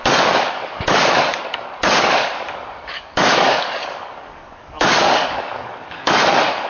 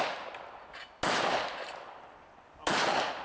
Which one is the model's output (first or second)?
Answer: first